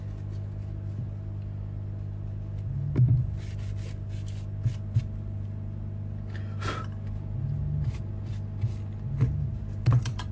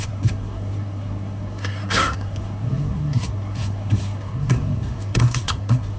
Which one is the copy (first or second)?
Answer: second